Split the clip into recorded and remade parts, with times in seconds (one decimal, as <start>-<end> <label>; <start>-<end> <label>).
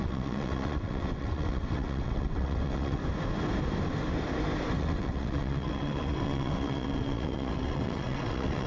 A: 0.0-3.0 remade; 3.0-4.8 recorded; 4.8-8.7 remade